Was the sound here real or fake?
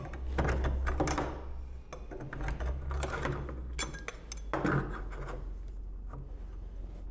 real